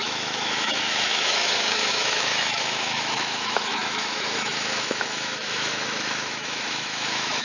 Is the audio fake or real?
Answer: fake